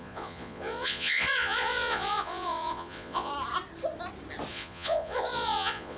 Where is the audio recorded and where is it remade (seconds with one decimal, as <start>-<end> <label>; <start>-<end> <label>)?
0.0-3.3 remade; 3.3-4.5 recorded; 4.5-6.0 remade